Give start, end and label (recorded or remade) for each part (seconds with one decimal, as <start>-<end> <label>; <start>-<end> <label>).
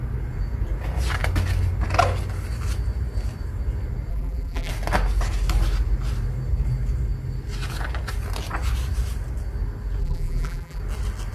0.0-4.1 recorded; 4.1-4.7 remade; 4.7-10.0 recorded; 10.0-10.8 remade; 10.8-11.3 recorded